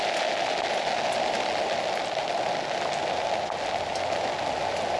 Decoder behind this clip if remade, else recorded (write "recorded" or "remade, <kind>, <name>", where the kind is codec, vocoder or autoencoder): recorded